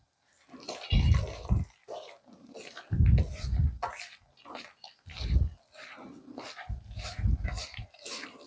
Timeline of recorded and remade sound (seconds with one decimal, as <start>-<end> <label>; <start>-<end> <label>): 0.0-1.8 recorded; 1.8-2.6 remade; 2.6-8.5 recorded